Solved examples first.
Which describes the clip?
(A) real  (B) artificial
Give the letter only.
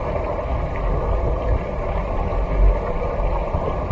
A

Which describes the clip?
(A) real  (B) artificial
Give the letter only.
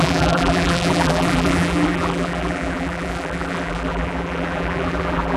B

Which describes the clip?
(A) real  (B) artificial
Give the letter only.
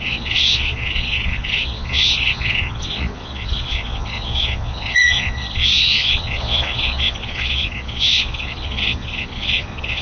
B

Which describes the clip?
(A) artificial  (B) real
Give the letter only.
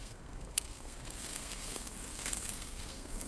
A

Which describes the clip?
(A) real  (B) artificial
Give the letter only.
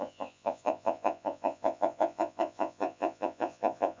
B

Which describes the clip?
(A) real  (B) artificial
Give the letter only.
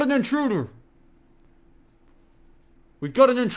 A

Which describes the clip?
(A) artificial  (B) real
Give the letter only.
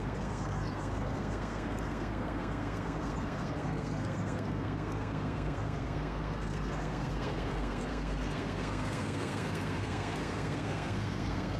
A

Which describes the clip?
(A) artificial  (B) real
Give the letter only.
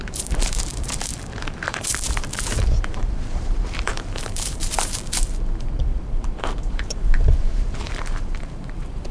A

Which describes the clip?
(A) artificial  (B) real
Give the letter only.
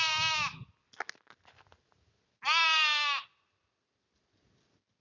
B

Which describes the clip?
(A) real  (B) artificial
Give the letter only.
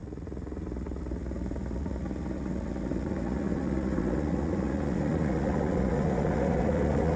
B